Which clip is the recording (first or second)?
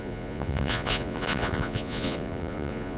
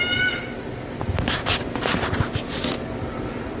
second